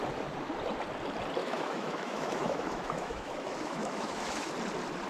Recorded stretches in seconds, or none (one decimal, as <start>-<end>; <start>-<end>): 0.0-1.4; 4.5-5.1